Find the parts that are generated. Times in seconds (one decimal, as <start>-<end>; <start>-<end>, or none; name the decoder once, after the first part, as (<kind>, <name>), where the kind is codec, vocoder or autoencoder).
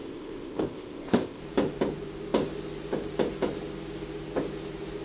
0.0-1.4 (codec, ZipCodec)